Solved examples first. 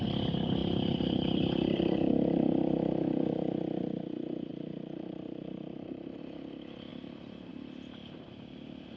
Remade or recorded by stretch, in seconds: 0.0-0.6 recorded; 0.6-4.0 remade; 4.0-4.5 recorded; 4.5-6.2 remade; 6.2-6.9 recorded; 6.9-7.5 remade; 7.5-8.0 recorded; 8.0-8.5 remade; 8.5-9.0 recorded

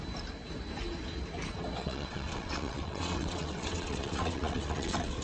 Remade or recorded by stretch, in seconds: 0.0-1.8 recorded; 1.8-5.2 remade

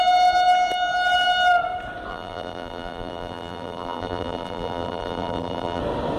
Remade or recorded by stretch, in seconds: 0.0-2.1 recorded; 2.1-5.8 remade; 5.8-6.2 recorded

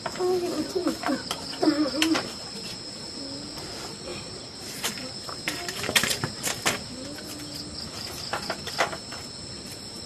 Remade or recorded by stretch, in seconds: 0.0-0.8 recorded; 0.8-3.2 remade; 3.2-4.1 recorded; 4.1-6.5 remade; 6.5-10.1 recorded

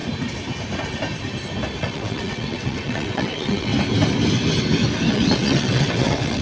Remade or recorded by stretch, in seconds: 0.0-1.8 recorded; 1.8-3.7 remade; 3.7-5.1 recorded; 5.1-6.4 remade

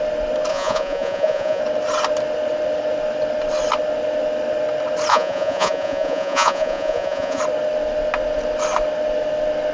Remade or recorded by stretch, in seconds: 0.0-0.5 recorded; 0.5-1.6 remade; 1.6-5.1 recorded; 5.1-7.4 remade; 7.4-9.7 recorded

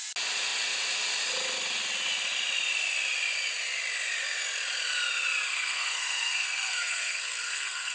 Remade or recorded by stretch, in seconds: 0.0-5.5 recorded; 5.5-7.9 remade